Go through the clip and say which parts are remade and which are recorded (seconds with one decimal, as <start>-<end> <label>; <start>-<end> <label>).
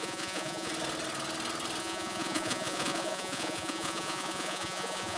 0.0-0.7 remade; 0.7-1.8 recorded; 1.8-5.2 remade